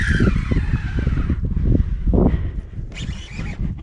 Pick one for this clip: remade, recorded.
recorded